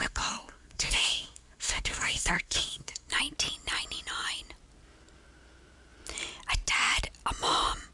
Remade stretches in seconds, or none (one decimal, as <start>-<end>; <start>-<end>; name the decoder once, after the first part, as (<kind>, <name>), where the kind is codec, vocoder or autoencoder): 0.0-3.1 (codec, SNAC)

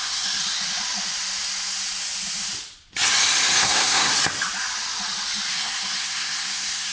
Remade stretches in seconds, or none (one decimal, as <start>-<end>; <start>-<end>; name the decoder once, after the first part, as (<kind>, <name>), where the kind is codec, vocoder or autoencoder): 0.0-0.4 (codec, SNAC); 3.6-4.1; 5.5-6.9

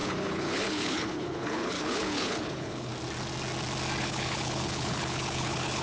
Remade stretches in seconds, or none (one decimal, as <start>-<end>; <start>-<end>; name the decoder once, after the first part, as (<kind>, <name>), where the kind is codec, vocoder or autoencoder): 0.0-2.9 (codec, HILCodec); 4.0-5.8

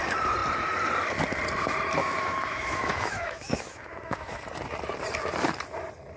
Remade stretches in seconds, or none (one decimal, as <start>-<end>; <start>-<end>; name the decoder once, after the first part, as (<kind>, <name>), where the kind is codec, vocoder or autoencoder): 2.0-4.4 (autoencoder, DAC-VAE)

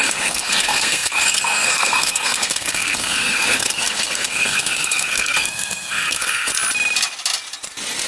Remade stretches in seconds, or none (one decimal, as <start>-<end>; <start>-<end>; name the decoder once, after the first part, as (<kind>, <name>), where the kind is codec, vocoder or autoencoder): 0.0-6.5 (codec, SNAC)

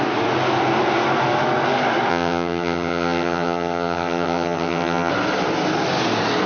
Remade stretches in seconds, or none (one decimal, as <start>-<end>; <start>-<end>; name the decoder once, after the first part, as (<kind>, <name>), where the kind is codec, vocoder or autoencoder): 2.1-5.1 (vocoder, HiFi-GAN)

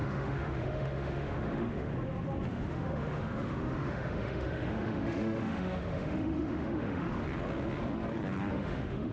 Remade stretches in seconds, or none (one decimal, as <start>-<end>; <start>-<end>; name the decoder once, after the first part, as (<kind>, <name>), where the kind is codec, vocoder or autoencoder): 0.0-1.9 (autoencoder, DAC-VAE); 2.5-7.2; 8.5-9.1

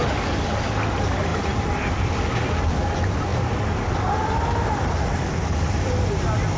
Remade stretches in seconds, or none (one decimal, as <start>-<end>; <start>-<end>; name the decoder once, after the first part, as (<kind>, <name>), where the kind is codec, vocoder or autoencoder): none